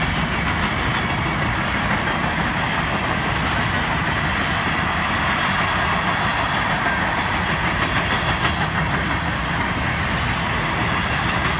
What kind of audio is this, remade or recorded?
recorded